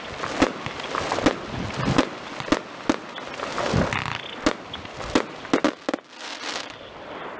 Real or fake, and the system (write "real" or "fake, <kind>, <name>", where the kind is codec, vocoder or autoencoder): real